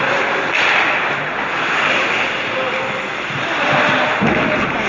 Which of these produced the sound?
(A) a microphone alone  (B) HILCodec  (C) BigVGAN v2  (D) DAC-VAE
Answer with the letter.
A